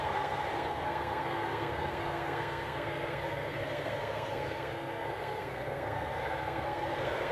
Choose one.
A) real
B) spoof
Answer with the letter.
B